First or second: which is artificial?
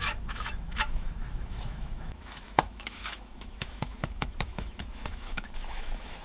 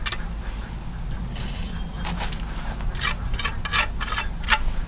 first